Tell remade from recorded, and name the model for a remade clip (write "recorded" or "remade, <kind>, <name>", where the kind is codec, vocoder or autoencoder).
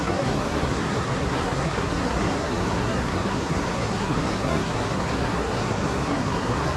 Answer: remade, codec, SNAC